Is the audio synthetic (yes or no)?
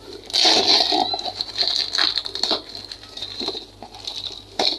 no